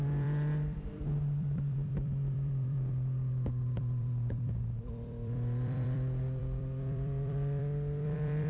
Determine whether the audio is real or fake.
fake